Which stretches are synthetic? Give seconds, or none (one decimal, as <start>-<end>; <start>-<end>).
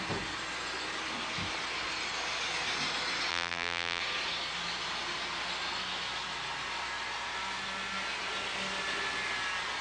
3.3-4.0